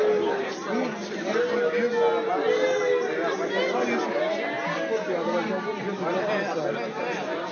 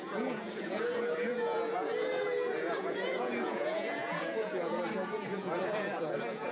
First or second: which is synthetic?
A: second